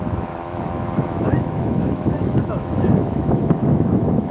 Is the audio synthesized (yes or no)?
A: yes